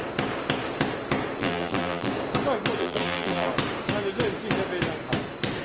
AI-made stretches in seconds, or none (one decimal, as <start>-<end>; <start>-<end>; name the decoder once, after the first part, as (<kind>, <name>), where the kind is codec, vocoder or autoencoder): 1.4-2.1 (vocoder, BigVGAN v2); 2.8-3.5